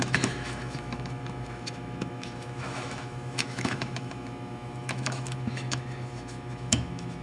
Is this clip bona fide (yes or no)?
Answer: no